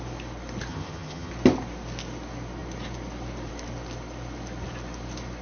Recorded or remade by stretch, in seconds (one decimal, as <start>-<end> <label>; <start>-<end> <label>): 0.0-0.7 recorded; 0.7-1.3 remade; 1.3-5.4 recorded